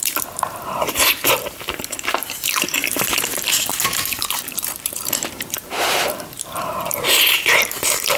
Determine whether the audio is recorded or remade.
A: remade